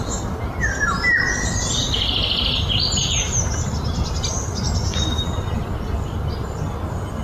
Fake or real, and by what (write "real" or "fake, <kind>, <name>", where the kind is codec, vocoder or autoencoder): real